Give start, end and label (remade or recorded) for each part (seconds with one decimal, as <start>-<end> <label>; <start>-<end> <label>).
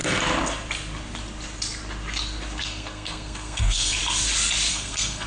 0.0-2.6 recorded; 2.6-4.0 remade; 4.0-4.7 recorded; 4.7-5.3 remade